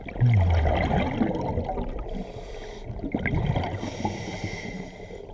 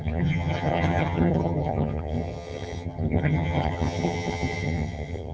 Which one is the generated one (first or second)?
second